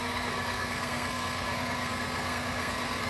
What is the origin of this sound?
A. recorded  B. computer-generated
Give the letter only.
B